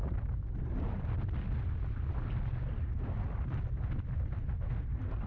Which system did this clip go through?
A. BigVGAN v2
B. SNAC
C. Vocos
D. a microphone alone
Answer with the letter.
D